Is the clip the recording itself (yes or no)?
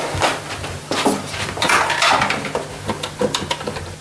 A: yes